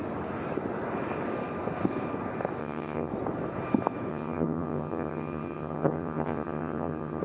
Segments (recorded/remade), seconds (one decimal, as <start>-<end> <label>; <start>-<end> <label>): 0.0-2.6 recorded; 2.6-3.1 remade; 3.1-4.1 recorded; 4.1-7.2 remade